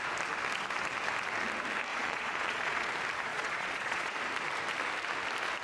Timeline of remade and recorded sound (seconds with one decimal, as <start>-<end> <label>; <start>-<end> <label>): 0.0-1.9 recorded; 1.9-2.9 remade; 2.9-3.3 recorded; 3.3-4.1 remade; 4.1-5.6 recorded